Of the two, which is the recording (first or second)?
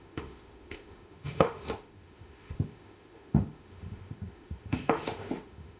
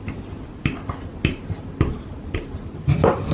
second